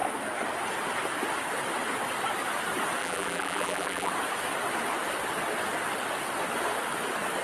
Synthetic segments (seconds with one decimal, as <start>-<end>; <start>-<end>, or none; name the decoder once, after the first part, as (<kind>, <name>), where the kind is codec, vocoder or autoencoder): 3.0-4.1 (vocoder, BigVGAN v2)